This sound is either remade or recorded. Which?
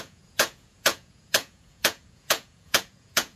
remade